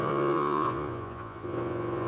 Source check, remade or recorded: remade